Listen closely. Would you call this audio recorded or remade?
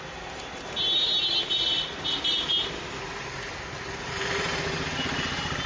recorded